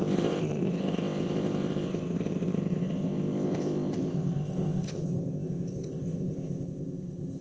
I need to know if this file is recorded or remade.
remade